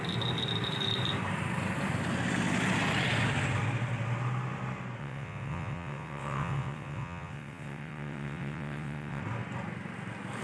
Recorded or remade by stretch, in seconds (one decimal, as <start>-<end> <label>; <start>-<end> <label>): 0.0-5.0 recorded; 5.0-9.2 remade; 9.2-10.4 recorded